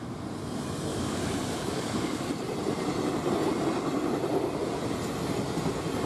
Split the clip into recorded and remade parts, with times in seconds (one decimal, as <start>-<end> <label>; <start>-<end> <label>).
0.0-0.9 recorded; 0.9-2.3 remade; 2.3-6.1 recorded